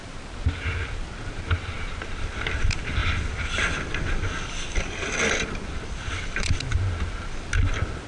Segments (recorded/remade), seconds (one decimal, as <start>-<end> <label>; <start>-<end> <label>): 0.0-8.1 recorded